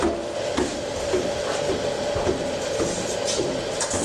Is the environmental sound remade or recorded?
remade